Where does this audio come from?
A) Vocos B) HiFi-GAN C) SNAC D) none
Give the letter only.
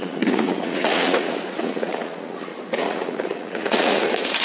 A